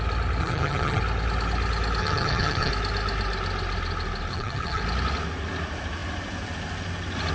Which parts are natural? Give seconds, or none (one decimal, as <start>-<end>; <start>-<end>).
0.0-0.4; 1.0-2.0; 2.7-4.3; 4.8-7.3